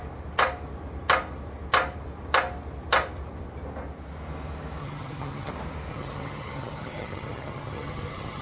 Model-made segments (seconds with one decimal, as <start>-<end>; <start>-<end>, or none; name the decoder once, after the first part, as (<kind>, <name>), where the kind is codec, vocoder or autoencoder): 4.8-5.5 (vocoder, HiFi-GAN); 5.9-8.4